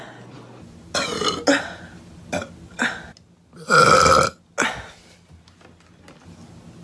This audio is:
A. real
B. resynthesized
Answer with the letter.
A